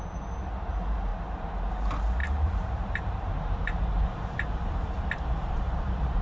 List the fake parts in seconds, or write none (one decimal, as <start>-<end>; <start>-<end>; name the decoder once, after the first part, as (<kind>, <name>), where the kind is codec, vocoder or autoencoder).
1.1-1.6 (vocoder, BigVGAN v2); 2.2-6.2